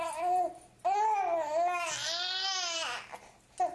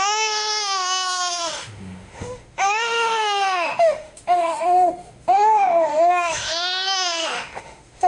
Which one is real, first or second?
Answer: first